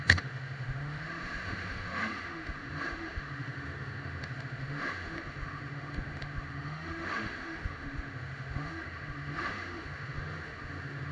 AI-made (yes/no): yes